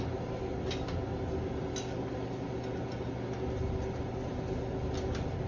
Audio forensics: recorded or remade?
recorded